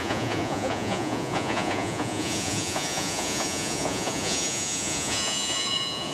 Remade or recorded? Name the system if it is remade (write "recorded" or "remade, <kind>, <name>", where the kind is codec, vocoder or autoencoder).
remade, vocoder, Vocos